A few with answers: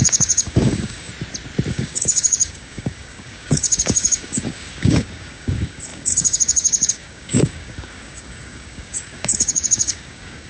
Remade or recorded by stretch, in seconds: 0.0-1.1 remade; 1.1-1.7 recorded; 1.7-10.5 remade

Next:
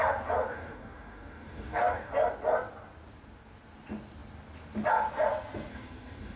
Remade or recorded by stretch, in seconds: 0.0-0.5 recorded; 0.5-2.1 remade; 2.1-5.7 recorded; 5.7-6.4 remade